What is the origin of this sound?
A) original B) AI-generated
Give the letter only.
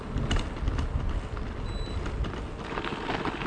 A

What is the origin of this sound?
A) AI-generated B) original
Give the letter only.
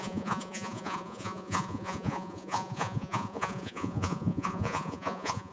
A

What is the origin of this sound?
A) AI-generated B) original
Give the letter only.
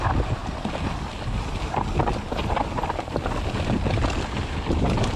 B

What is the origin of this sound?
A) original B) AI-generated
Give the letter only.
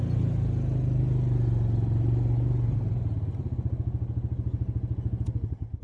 A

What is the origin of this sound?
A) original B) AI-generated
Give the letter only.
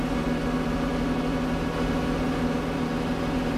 A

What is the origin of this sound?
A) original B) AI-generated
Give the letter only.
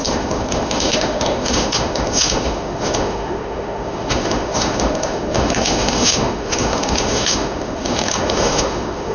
B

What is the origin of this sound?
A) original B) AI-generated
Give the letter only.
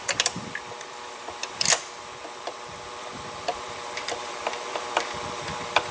B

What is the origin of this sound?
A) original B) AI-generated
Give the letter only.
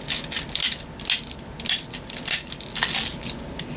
A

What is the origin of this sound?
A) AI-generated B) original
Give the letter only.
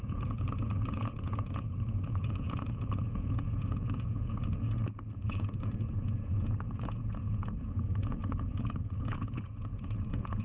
A